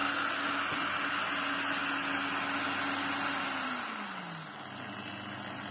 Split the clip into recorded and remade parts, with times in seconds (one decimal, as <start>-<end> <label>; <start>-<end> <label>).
0.0-5.7 recorded